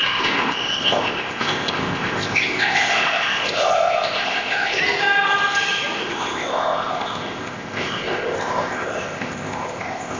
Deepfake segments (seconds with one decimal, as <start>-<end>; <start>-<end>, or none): 0.0-4.8; 6.0-10.2